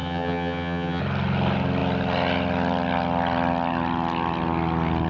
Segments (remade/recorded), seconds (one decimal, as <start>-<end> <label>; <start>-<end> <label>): 0.0-1.0 remade; 1.0-5.1 recorded

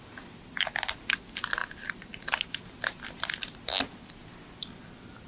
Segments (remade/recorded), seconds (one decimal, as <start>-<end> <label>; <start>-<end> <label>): 0.0-5.3 recorded

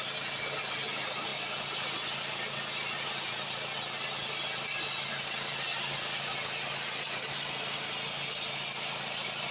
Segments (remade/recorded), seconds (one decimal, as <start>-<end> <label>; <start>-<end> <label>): 0.0-9.5 recorded

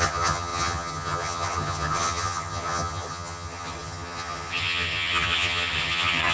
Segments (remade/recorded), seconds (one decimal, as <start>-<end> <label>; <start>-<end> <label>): 0.0-6.3 remade

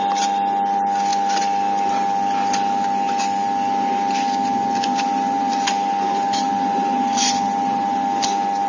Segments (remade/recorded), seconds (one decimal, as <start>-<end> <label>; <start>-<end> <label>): 0.0-8.7 recorded

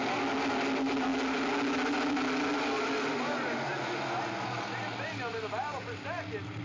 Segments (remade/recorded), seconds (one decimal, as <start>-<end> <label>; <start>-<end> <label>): 0.0-6.6 recorded

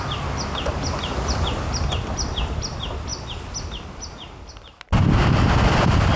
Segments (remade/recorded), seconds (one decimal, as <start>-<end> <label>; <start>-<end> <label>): 0.0-6.2 recorded

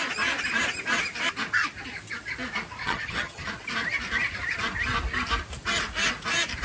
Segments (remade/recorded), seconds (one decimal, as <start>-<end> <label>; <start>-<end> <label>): 0.0-2.8 recorded; 2.8-3.5 remade; 3.5-6.6 recorded